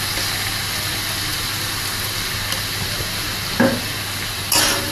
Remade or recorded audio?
recorded